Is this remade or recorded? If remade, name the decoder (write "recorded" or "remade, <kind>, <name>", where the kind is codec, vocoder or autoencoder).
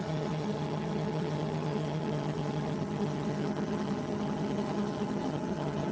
remade, vocoder, HiFi-GAN